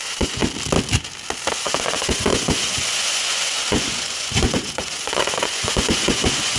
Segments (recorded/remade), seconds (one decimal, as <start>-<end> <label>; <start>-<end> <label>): 0.0-0.4 remade; 0.4-1.6 recorded; 1.6-6.6 remade